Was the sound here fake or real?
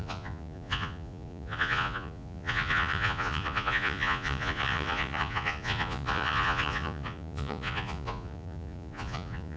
fake